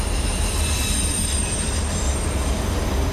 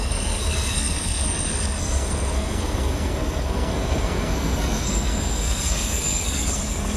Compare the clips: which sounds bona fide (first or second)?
first